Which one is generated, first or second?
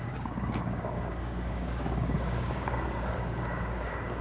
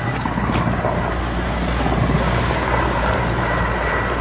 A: first